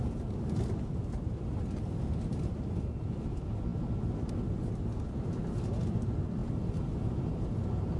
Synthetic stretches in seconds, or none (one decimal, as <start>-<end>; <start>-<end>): none